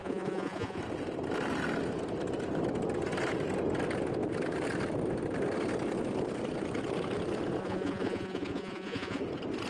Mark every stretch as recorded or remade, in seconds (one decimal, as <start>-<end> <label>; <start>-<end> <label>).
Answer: 0.0-0.8 remade; 0.8-7.6 recorded; 7.6-9.2 remade; 9.2-9.7 recorded